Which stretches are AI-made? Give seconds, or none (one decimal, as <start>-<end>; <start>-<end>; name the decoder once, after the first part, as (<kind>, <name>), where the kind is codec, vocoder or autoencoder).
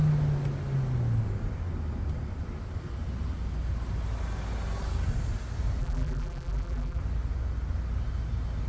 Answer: 5.8-7.0 (vocoder, BigVGAN v2)